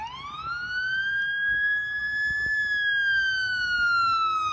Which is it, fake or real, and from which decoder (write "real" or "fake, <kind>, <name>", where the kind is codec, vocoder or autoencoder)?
real